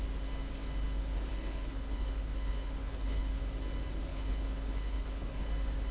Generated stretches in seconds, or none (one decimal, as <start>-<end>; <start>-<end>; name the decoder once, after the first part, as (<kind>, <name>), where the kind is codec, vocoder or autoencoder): 1.3-3.4 (codec, HILCodec); 4.1-5.5